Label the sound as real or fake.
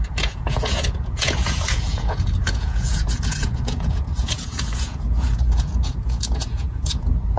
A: fake